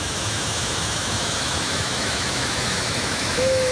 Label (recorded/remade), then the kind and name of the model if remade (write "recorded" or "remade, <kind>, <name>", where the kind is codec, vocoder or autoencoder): remade, autoencoder, DAC-VAE